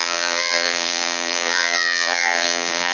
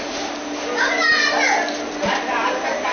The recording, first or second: second